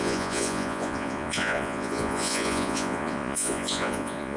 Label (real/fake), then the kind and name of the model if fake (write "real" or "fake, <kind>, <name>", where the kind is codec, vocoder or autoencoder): fake, vocoder, Vocos